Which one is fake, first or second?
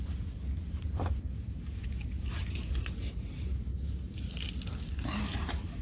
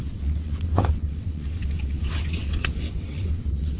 second